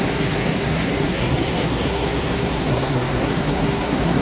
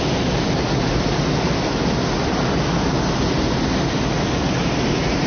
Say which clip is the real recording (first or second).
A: second